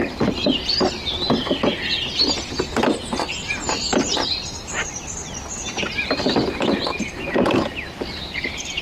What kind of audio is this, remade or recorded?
recorded